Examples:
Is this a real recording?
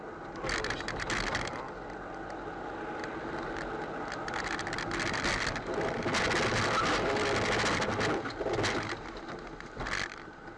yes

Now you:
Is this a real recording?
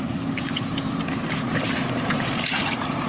no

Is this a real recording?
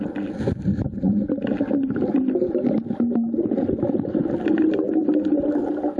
yes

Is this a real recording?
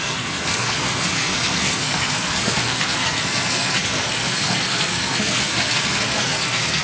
no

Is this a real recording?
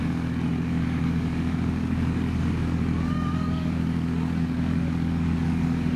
no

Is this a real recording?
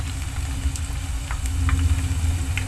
yes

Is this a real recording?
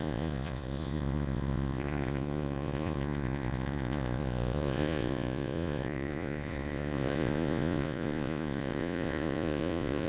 no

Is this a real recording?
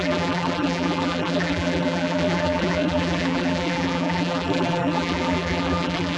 no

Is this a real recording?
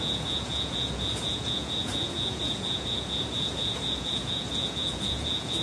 no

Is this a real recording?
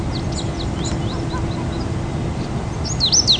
yes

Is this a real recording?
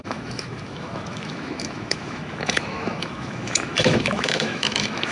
no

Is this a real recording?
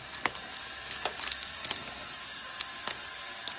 yes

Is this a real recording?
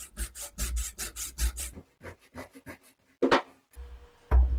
yes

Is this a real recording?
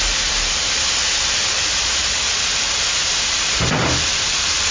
yes